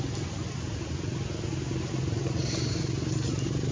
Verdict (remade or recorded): recorded